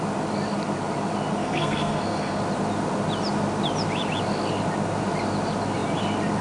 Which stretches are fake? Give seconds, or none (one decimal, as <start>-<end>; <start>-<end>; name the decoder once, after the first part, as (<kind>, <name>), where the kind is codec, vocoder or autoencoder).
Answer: 1.4-2.4 (codec, SNAC)